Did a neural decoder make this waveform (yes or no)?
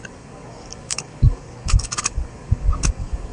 yes